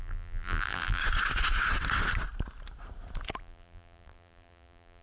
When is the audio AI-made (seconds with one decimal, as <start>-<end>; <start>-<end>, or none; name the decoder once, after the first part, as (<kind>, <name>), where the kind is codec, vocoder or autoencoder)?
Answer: 0.0-1.0 (vocoder, BigVGAN v2); 3.4-5.0